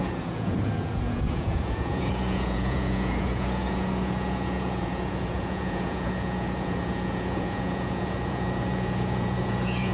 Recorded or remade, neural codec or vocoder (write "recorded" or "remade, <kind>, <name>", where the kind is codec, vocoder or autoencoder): remade, vocoder, Vocos